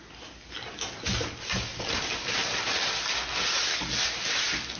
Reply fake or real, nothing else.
real